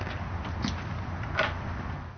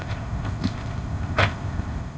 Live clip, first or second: first